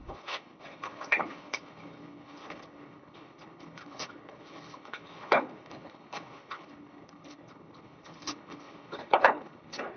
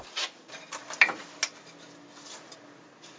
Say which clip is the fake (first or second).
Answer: first